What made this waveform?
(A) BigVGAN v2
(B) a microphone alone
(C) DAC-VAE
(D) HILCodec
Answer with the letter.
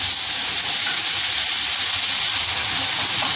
B